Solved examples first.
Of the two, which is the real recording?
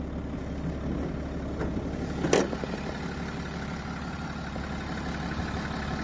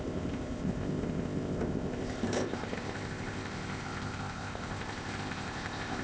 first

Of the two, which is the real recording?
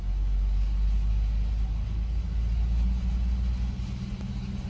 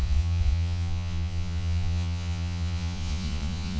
first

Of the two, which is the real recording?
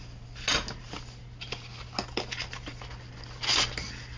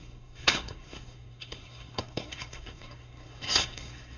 first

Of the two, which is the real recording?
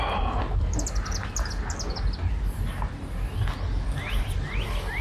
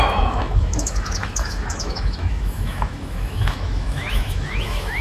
first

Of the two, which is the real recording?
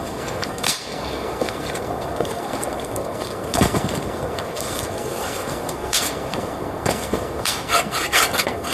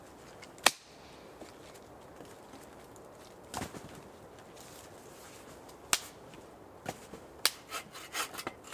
second